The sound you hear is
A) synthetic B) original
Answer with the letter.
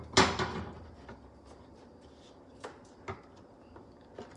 B